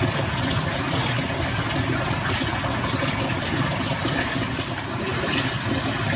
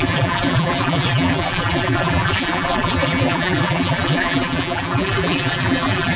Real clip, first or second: first